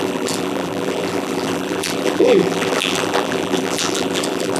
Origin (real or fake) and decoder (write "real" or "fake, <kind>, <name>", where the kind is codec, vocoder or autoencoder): fake, vocoder, BigVGAN v2